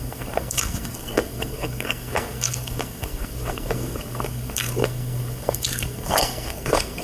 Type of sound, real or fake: fake